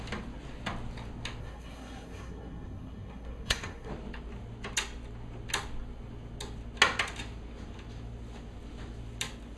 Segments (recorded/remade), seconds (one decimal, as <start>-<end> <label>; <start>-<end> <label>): 0.0-1.4 recorded; 1.4-3.9 remade; 3.9-9.6 recorded